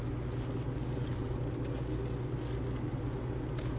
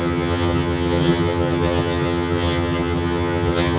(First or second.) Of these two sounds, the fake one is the second